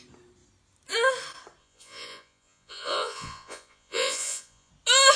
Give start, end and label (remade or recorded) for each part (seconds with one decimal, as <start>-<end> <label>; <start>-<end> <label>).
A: 0.0-1.6 recorded; 1.6-4.7 remade; 4.7-5.2 recorded

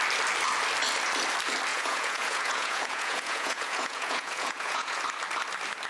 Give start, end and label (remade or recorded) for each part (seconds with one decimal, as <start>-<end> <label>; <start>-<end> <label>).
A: 0.0-1.7 recorded; 1.7-5.0 remade; 5.0-5.9 recorded

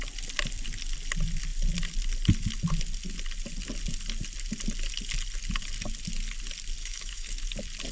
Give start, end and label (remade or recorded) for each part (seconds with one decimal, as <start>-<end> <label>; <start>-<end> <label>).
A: 0.0-6.8 recorded; 6.8-7.3 remade; 7.3-7.9 recorded